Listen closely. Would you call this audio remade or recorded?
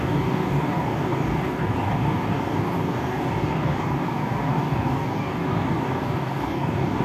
remade